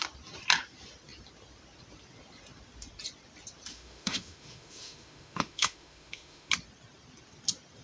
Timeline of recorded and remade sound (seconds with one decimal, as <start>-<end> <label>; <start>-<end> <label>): 0.0-3.7 recorded; 3.7-6.5 remade; 6.5-7.8 recorded